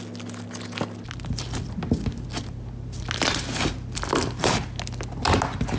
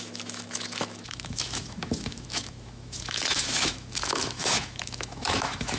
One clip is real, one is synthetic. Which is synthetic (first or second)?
second